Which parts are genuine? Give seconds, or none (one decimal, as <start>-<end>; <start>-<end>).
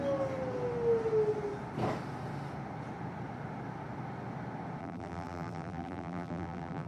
0.0-4.8